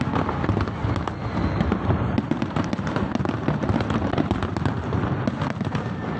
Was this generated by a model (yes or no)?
no